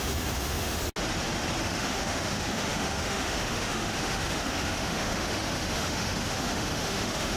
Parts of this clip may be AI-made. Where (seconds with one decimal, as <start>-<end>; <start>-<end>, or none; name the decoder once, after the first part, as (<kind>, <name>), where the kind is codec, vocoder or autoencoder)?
0.0-0.8 (autoencoder, DAC-VAE); 1.6-7.4